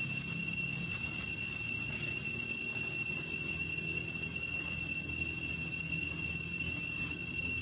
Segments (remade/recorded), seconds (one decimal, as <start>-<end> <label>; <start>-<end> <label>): 0.0-7.6 recorded